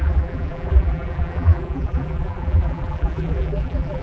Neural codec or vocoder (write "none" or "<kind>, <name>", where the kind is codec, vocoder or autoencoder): vocoder, BigVGAN v2